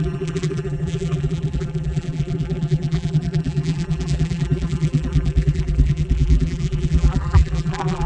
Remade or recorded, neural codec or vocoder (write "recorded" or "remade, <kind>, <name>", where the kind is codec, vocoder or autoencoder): remade, vocoder, BigVGAN v2